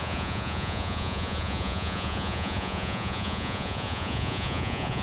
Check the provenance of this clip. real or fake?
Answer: fake